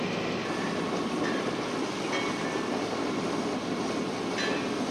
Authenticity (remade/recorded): recorded